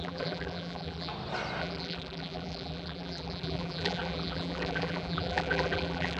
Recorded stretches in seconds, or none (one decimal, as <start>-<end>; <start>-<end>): 1.1-1.6